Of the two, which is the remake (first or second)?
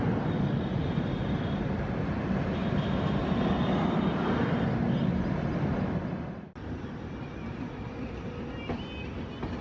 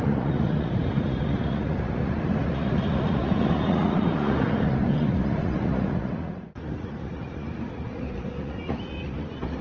second